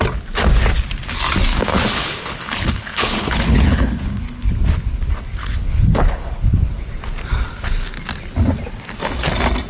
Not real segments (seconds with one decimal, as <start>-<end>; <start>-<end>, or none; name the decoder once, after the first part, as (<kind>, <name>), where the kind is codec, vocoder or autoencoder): 1.7-4.5 (codec, HILCodec); 5.4-6.7